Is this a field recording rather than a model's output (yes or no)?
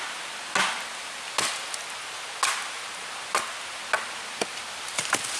yes